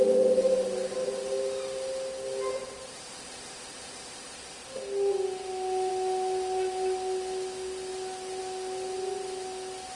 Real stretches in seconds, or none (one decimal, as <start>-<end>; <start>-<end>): 0.0-10.0